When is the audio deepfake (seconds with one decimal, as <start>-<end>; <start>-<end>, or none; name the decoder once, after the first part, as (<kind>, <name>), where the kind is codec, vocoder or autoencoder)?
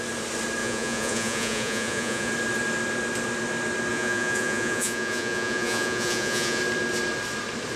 0.6-2.3 (vocoder, Vocos); 3.9-6.6